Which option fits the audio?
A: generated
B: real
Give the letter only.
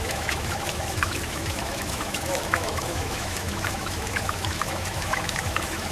A